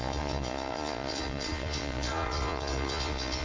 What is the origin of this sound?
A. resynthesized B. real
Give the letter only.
A